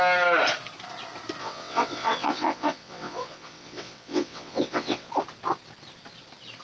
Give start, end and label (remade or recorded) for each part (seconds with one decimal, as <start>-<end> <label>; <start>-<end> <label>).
0.0-1.4 recorded; 1.4-5.1 remade; 5.1-6.6 recorded